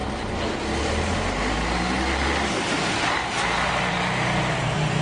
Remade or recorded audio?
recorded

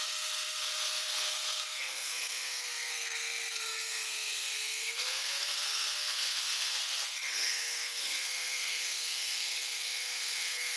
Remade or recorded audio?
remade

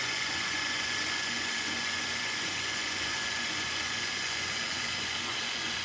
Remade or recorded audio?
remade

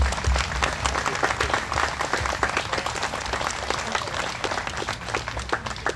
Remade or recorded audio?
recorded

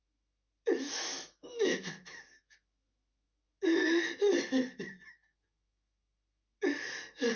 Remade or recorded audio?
remade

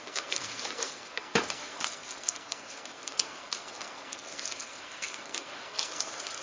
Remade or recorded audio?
remade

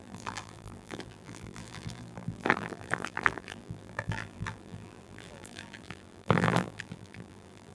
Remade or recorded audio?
remade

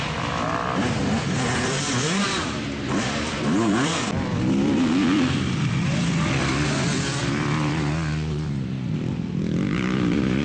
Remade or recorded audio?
remade